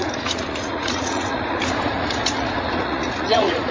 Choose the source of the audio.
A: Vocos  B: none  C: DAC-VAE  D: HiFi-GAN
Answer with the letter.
A